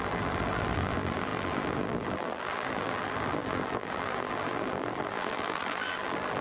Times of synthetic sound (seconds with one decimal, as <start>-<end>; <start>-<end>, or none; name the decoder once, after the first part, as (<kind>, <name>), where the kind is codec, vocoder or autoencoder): 0.0-6.4 (vocoder, BigVGAN v2)